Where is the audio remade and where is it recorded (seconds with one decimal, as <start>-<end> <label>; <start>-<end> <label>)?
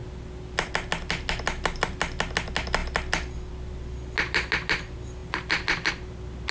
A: 0.0-6.5 recorded